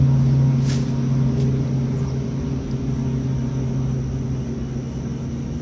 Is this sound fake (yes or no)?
no